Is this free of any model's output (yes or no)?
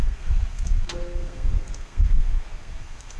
no